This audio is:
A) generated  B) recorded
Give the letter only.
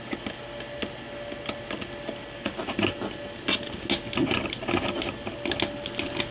B